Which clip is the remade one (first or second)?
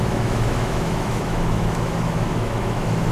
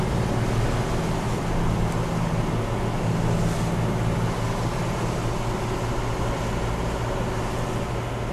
first